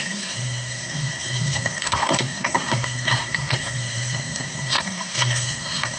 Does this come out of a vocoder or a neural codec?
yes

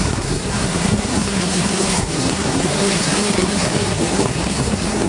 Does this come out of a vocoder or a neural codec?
yes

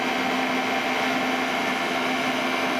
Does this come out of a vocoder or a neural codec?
no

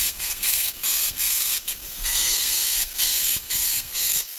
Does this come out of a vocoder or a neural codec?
yes